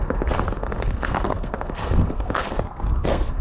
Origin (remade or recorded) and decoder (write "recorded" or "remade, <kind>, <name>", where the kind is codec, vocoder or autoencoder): remade, codec, SNAC